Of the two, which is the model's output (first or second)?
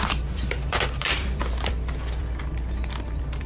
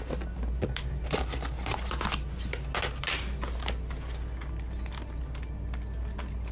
first